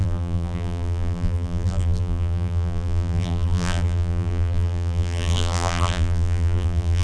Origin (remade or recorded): remade